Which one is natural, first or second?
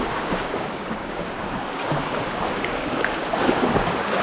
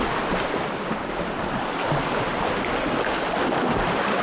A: second